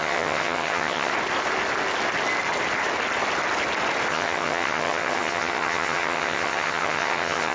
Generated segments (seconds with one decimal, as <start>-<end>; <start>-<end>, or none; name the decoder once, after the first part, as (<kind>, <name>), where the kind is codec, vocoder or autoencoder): 0.0-1.1 (vocoder, HiFi-GAN); 4.1-7.5